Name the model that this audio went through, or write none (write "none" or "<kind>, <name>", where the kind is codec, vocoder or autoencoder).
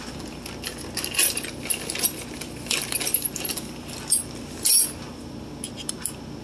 none